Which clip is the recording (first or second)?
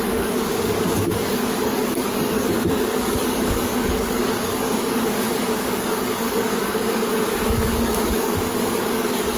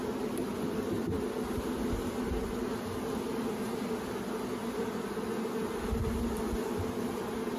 second